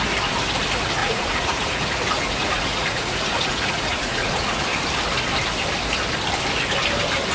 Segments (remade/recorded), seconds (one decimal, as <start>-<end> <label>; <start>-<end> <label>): 0.0-1.0 recorded; 1.0-4.6 remade; 4.6-7.3 recorded